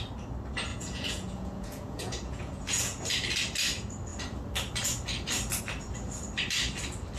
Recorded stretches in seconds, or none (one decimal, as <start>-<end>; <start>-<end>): 0.0-0.7; 3.0-7.2